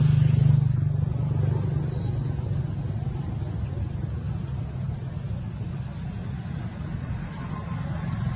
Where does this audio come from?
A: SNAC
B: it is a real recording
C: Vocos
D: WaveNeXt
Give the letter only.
B